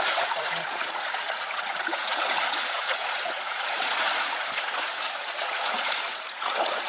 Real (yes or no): no